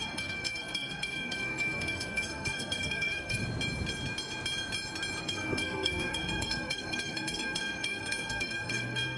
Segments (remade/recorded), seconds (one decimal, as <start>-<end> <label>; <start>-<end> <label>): 0.0-3.4 remade; 3.4-5.2 recorded; 5.2-9.2 remade